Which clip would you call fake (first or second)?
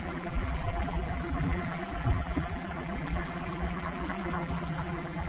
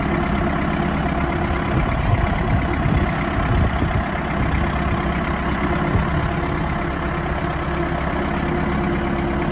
first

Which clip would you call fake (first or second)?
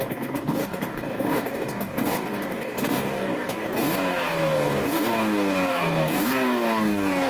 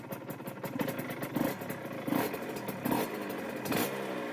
first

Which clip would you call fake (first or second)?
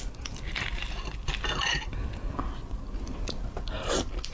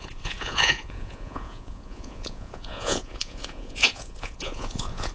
second